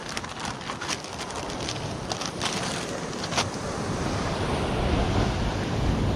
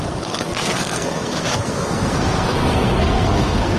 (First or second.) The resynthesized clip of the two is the second